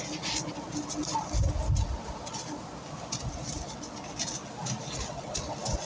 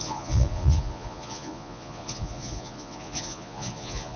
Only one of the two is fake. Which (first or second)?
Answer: second